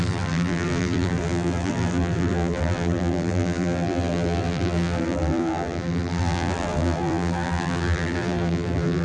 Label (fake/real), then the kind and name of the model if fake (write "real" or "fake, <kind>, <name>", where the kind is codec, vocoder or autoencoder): fake, vocoder, BigVGAN v2